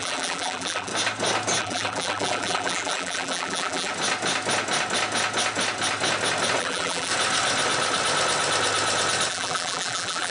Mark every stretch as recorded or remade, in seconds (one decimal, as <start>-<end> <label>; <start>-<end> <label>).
0.0-0.9 remade; 0.9-1.6 recorded; 1.6-3.9 remade; 3.9-6.6 recorded; 6.6-7.1 remade; 7.1-9.3 recorded; 9.3-10.3 remade